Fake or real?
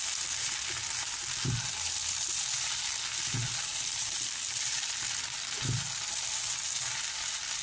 real